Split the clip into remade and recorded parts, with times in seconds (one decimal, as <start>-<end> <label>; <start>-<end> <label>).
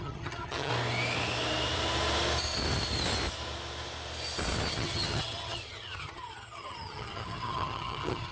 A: 0.0-0.7 remade; 0.7-4.7 recorded; 4.7-8.3 remade